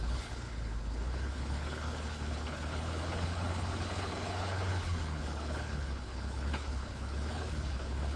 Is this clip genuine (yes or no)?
no